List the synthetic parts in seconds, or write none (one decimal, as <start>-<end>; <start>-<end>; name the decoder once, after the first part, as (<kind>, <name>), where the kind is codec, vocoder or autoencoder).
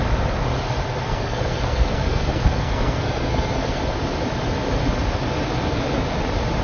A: 1.0-3.8 (codec, SNAC)